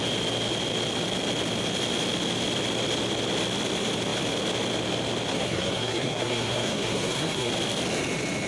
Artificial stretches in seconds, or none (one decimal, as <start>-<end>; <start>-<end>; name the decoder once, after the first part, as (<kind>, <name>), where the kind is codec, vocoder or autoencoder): 5.3-7.5 (codec, SNAC)